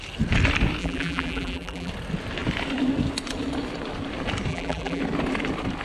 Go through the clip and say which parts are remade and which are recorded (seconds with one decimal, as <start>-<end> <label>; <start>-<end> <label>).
0.0-0.8 recorded; 0.8-1.9 remade; 1.9-4.5 recorded; 4.5-5.0 remade; 5.0-5.8 recorded